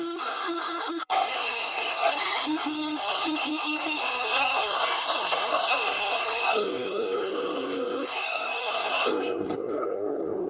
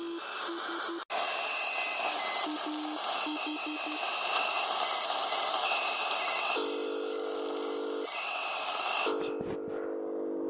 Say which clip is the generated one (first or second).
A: first